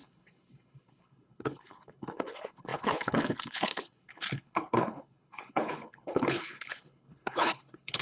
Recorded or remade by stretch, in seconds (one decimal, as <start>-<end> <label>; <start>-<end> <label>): 0.0-8.0 remade